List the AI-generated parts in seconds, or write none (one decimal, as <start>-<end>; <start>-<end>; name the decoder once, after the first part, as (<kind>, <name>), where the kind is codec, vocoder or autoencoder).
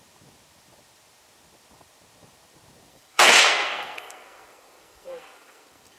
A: 2.9-6.0 (codec, SNAC)